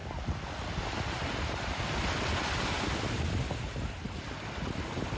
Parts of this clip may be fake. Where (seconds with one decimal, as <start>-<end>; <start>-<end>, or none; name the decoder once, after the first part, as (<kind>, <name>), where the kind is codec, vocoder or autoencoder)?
none